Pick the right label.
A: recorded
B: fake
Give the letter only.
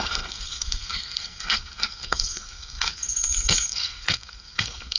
B